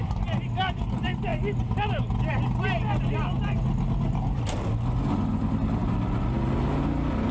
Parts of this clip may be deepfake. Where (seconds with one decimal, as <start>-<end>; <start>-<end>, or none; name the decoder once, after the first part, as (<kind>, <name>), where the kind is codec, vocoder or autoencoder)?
none